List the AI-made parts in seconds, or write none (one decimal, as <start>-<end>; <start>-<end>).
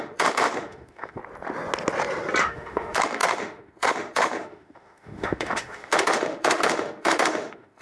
0.0-1.2; 2.4-7.8